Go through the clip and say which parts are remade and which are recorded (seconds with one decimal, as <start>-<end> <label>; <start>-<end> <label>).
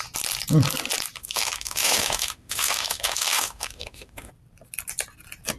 0.0-1.2 recorded; 1.2-4.3 remade; 4.3-5.6 recorded